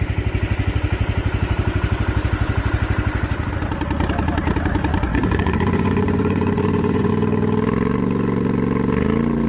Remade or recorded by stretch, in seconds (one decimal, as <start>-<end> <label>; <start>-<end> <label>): 0.0-5.1 recorded; 5.1-7.1 remade; 7.1-9.5 recorded